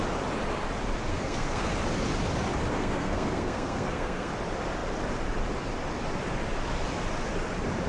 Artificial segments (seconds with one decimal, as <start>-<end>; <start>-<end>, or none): 1.1-1.7; 2.7-4.3